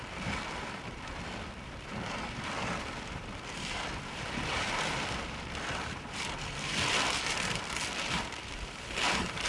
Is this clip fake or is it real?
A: fake